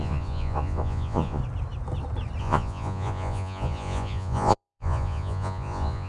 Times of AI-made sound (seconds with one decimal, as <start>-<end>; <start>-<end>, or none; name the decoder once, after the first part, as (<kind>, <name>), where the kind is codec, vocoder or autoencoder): 0.0-1.4 (vocoder, Vocos); 2.4-6.1